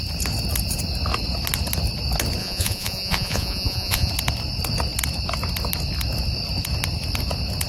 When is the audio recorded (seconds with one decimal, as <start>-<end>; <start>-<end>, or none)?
0.0-2.4; 4.1-7.7